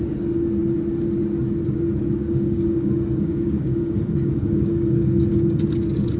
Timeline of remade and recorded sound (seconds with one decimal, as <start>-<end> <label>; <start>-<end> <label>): 0.0-2.2 recorded; 2.2-5.6 remade; 5.6-6.2 recorded